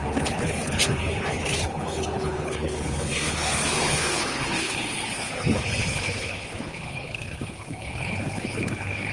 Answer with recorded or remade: remade